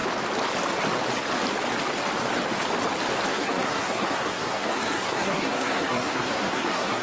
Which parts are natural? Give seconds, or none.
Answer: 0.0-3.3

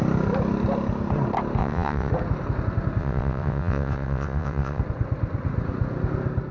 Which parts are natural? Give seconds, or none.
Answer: 0.0-1.6; 2.1-3.0; 4.8-6.5